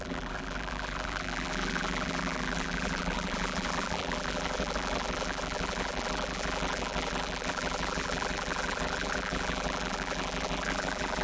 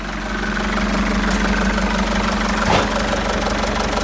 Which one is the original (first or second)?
second